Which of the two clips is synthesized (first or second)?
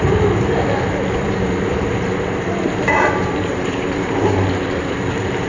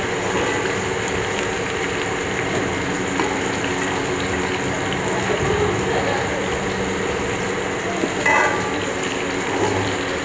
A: first